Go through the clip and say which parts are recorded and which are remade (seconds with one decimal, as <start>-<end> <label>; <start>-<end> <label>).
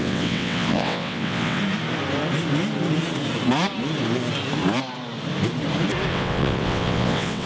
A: 0.0-1.6 remade; 1.6-6.1 recorded; 6.1-7.5 remade